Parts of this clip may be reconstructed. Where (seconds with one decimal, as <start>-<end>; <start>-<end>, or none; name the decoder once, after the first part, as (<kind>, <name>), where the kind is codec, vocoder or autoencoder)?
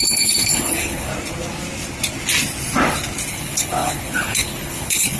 0.0-1.1 (codec, HILCodec); 3.3-5.2